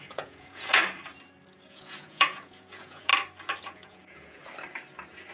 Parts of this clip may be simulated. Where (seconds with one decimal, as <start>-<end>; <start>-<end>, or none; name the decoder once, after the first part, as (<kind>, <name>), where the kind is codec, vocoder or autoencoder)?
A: 0.0-0.8 (vocoder, Vocos); 1.7-3.1; 3.6-4.4